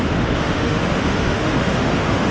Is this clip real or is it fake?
fake